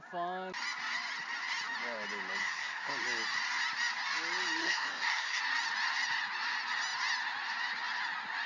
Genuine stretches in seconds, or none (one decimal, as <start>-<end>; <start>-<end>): 0.0-2.4; 2.9-4.6; 5.4-8.5